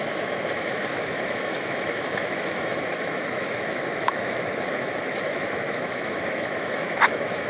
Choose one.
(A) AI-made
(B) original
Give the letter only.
A